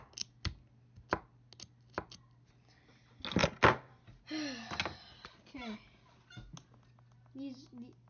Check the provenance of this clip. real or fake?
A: real